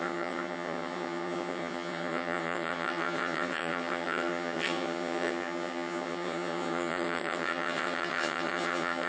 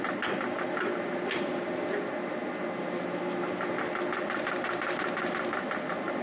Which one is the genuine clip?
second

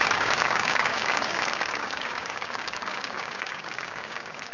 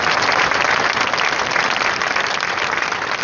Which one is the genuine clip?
second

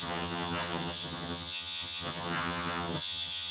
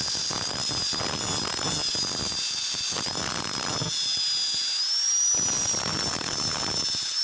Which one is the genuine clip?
second